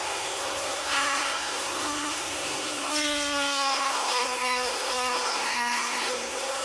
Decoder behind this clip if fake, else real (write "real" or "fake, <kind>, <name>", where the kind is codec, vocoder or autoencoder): fake, codec, SNAC